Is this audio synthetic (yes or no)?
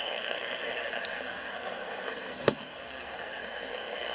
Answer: yes